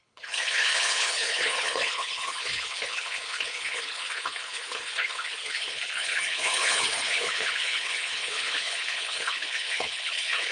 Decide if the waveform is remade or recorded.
remade